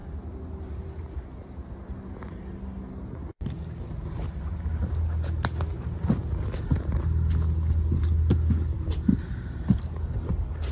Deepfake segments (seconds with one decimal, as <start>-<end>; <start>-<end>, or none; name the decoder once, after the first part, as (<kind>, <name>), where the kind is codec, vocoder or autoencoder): none